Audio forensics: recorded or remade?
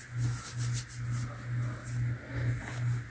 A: recorded